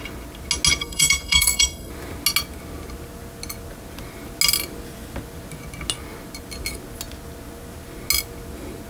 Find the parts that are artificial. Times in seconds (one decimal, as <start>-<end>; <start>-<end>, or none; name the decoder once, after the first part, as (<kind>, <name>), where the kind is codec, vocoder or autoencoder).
0.8-1.9 (codec, SNAC)